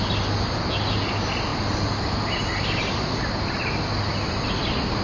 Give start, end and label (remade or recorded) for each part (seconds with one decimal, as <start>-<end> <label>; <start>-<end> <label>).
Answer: 0.0-5.0 recorded